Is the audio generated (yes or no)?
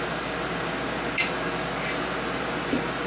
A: no